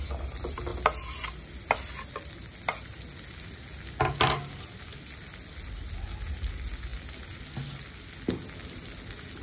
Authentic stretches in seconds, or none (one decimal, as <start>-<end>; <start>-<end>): 0.0-9.4